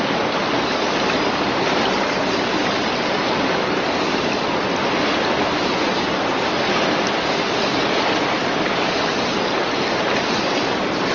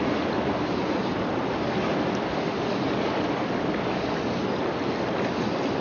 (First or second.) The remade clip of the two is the first